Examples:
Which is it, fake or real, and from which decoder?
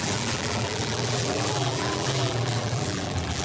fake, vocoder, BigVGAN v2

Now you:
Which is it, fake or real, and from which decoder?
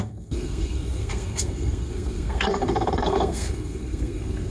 fake, codec, SNAC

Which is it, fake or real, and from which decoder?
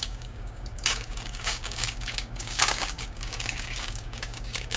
fake, codec, DAC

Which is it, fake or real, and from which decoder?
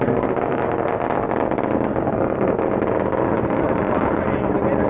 real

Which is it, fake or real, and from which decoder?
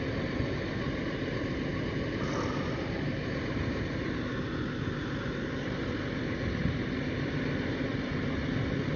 real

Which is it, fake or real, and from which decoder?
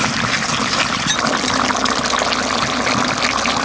real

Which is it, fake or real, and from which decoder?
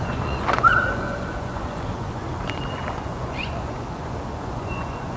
fake, vocoder, Vocos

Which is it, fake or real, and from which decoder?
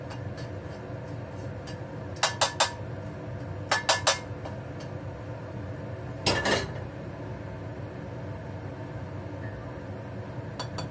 real